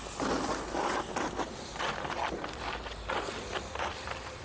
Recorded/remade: recorded